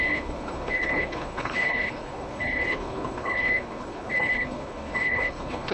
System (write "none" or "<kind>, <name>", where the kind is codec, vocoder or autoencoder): codec, HILCodec